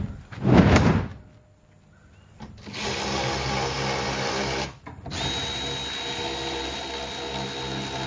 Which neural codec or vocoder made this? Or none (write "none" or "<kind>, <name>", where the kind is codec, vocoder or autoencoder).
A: none